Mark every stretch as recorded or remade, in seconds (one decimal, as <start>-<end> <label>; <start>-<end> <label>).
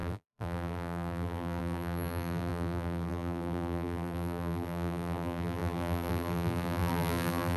0.0-7.6 remade